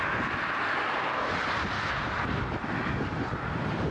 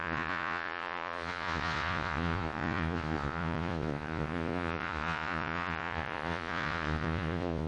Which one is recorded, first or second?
first